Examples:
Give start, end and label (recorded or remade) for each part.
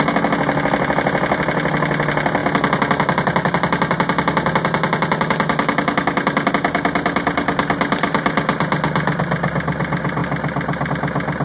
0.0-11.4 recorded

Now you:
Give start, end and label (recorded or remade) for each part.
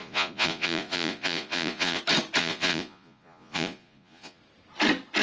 0.0-2.0 remade; 2.0-2.4 recorded; 2.4-4.4 remade; 4.4-5.2 recorded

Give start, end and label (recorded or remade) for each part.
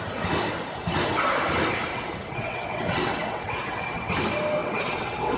0.0-1.9 recorded; 1.9-4.1 remade; 4.1-4.6 recorded; 4.6-5.4 remade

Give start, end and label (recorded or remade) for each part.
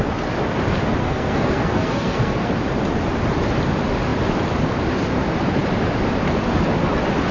0.0-1.0 recorded; 1.0-2.5 remade; 2.5-7.3 recorded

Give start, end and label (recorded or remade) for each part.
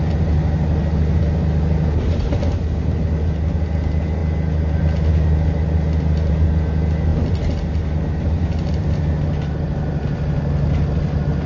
0.0-11.5 recorded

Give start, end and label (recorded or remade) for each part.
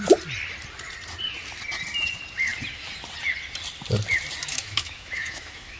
0.0-4.5 recorded; 4.5-5.8 remade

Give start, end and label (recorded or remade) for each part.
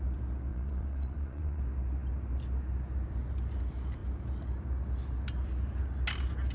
0.0-0.5 recorded; 0.5-1.6 remade; 1.6-6.5 recorded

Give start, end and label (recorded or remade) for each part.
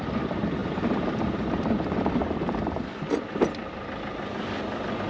0.0-0.6 recorded; 0.6-1.7 remade; 1.7-5.1 recorded